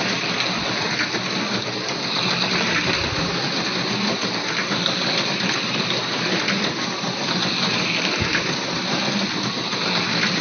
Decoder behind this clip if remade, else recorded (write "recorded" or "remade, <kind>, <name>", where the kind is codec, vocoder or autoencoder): recorded